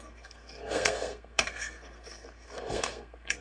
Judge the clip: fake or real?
fake